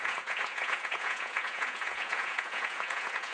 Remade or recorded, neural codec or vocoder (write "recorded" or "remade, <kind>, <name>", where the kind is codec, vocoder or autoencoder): remade, vocoder, Vocos